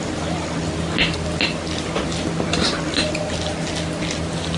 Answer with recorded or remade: recorded